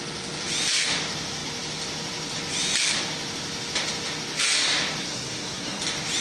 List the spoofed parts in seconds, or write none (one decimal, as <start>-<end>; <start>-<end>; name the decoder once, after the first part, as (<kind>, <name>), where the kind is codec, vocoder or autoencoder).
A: 5.0-5.8 (codec, SNAC)